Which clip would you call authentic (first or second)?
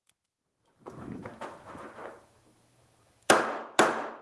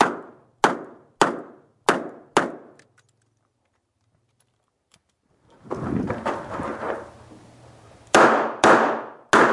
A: second